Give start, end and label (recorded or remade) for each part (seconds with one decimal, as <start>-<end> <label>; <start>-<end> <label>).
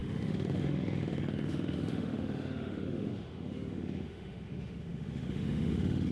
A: 0.0-6.1 remade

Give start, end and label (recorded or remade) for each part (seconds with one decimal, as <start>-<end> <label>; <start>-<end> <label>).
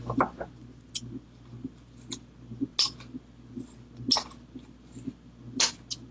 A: 0.0-6.1 recorded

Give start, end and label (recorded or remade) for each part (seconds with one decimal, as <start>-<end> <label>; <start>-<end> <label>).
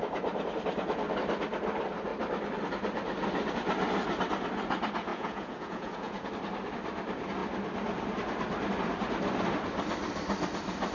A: 0.0-5.1 recorded; 5.1-6.3 remade; 6.3-10.9 recorded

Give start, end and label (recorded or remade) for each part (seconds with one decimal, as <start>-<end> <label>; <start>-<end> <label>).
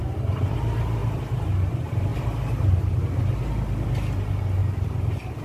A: 0.0-5.4 recorded